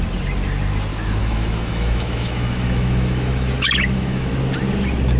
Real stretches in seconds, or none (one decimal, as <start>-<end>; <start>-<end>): 0.0-1.2; 4.3-5.2